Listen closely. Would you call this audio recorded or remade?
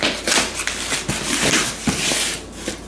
recorded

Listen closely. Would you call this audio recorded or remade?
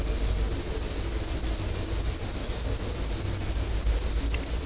recorded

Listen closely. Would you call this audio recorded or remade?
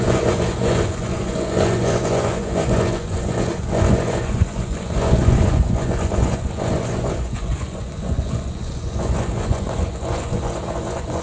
remade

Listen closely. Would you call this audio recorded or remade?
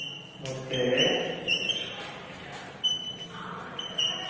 recorded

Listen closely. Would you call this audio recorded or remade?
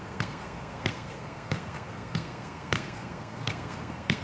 remade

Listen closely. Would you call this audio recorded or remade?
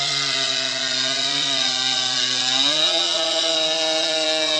remade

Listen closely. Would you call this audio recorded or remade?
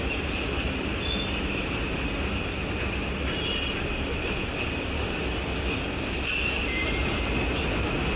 recorded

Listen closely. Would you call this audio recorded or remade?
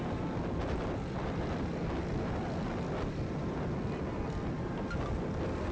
recorded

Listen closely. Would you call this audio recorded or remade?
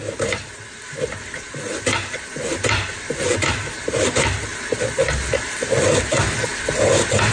recorded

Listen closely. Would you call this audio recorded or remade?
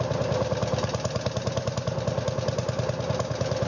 recorded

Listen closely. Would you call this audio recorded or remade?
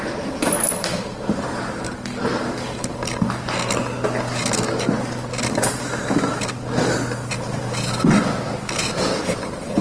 recorded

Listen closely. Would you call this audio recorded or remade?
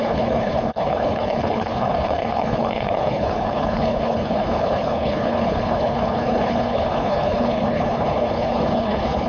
remade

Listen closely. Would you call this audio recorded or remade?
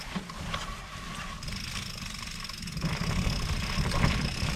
recorded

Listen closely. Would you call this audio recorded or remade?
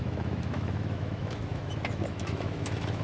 remade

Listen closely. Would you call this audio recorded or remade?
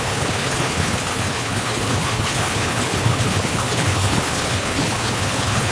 remade